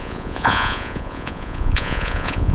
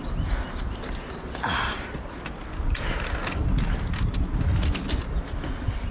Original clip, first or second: second